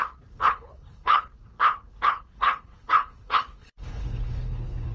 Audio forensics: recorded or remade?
remade